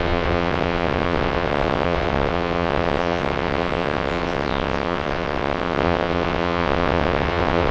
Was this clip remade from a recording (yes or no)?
yes